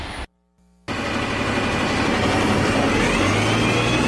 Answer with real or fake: real